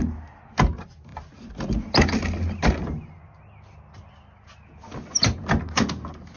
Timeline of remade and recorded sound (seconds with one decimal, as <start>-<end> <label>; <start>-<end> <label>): 0.0-6.4 recorded